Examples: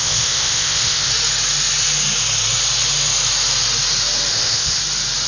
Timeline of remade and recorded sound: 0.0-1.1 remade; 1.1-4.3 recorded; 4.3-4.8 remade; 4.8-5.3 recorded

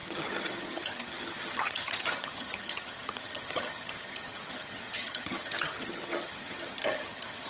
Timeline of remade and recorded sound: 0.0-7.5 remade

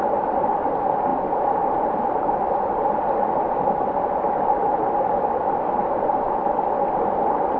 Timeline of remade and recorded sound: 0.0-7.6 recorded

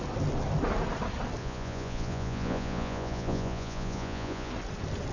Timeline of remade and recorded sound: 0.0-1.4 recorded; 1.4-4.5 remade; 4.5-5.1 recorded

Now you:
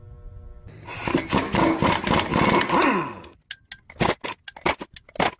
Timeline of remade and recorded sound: 0.0-5.4 recorded